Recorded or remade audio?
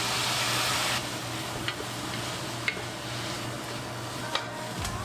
recorded